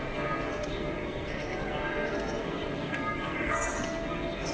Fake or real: fake